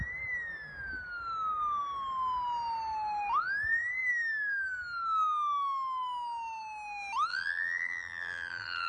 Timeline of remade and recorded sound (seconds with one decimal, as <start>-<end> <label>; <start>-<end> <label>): 0.0-7.3 recorded; 7.3-8.9 remade

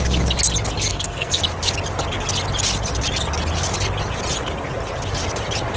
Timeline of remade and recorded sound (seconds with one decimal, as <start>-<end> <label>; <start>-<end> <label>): 0.0-0.9 recorded; 0.9-1.4 remade; 1.4-5.8 recorded

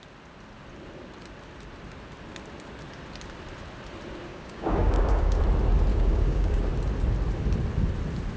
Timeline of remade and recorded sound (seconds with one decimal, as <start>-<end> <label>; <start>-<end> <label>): 0.0-4.3 recorded; 4.3-5.4 remade; 5.4-5.9 recorded; 5.9-6.7 remade; 6.7-8.4 recorded

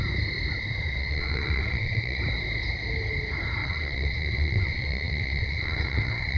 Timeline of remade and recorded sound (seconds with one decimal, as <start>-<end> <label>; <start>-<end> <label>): 0.0-1.0 recorded; 1.0-2.2 remade; 2.2-3.6 recorded; 3.6-6.4 remade

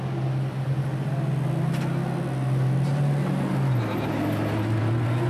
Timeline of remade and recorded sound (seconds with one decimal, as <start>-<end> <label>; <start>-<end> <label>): 0.0-5.3 recorded

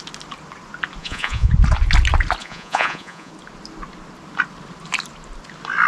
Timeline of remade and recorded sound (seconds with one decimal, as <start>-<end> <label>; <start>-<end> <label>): 0.0-1.0 recorded; 1.0-1.5 remade; 1.5-2.4 recorded; 2.4-3.3 remade; 3.3-5.9 recorded

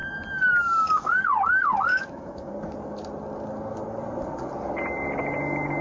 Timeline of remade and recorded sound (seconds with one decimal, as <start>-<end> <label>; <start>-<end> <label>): 0.0-1.9 recorded; 1.9-2.5 remade; 2.5-5.8 recorded